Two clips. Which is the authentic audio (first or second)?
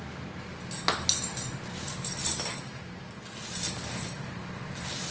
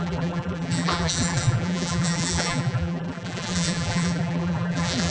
first